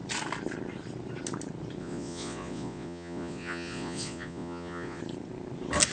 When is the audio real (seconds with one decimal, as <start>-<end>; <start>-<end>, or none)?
0.0-1.8; 5.0-5.9